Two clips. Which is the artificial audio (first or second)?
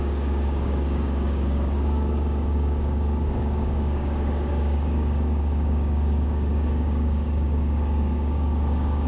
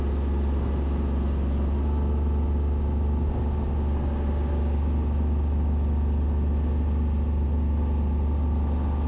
first